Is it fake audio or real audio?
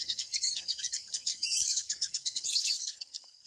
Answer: fake